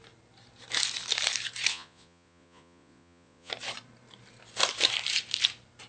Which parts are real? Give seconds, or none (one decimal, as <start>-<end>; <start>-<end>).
0.0-1.7; 3.5-5.9